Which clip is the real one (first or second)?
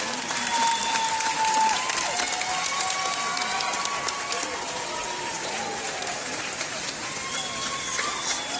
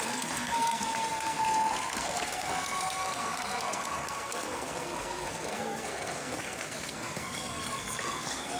first